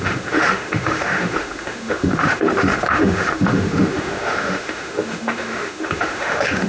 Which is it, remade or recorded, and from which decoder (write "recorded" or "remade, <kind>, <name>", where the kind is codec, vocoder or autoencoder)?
remade, autoencoder, DAC-VAE